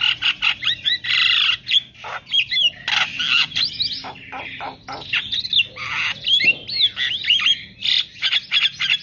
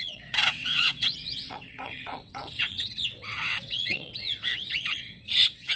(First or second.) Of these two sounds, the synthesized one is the second